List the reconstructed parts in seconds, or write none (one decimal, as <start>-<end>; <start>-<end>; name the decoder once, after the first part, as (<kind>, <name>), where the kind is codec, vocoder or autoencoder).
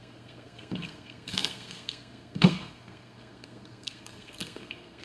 0.0-5.0 (codec, SNAC)